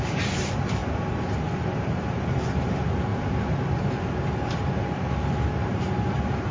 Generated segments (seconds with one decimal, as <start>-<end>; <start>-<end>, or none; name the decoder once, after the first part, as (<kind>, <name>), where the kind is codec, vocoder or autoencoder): none